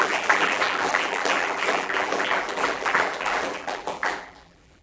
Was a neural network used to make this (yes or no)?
yes